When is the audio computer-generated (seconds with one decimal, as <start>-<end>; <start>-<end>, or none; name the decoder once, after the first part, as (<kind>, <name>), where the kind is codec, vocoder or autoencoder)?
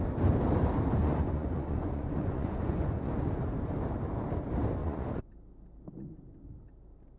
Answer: 1.0-3.1 (vocoder, Vocos); 4.8-5.3